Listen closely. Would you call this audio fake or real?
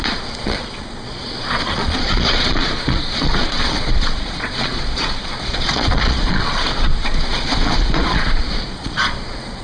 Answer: fake